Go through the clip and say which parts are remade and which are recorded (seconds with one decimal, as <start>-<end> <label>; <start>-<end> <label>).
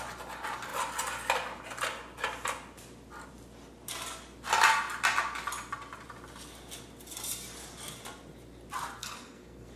0.0-9.0 recorded; 9.0-9.8 remade